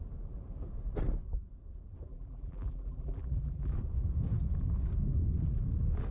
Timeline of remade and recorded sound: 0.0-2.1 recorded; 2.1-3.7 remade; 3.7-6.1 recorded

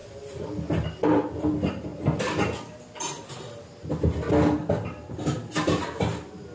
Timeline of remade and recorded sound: 0.0-4.6 recorded; 4.6-5.5 remade; 5.5-6.5 recorded

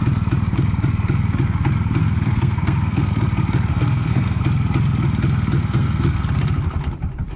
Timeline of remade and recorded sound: 0.0-2.0 recorded; 2.0-3.1 remade; 3.1-3.7 recorded; 3.7-4.4 remade; 4.4-5.6 recorded; 5.6-6.2 remade; 6.2-7.4 recorded

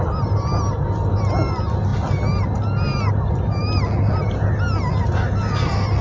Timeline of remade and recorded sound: 0.0-6.0 recorded